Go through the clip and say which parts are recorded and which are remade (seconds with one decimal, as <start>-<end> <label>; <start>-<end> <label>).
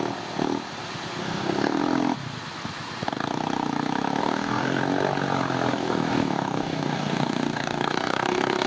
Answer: 0.0-1.2 recorded; 1.2-1.8 remade; 1.8-4.2 recorded; 4.2-4.8 remade; 4.8-5.8 recorded; 5.8-8.7 remade